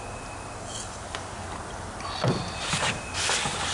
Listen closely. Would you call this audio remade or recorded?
recorded